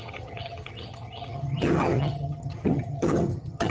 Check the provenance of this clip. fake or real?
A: fake